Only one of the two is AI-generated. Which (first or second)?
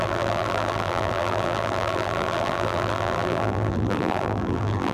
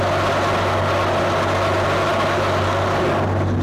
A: first